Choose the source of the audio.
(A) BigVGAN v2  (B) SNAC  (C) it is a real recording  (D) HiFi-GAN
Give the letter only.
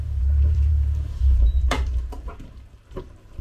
A